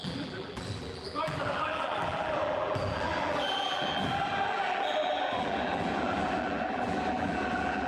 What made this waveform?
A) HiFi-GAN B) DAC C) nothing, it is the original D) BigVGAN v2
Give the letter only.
D